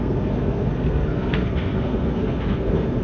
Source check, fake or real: fake